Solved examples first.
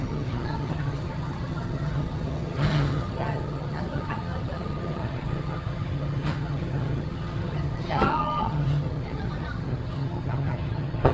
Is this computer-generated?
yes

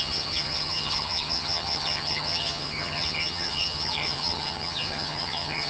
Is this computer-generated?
yes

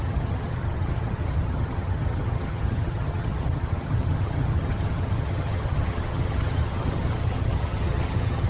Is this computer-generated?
yes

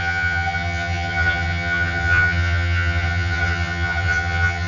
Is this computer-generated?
yes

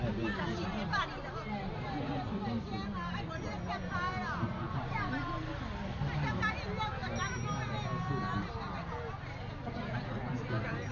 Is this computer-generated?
no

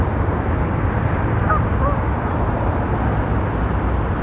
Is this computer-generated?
no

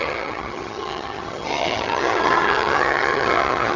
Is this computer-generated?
yes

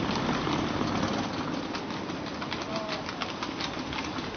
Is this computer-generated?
no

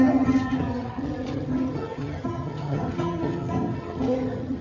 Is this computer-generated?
yes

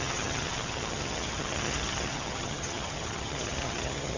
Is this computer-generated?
yes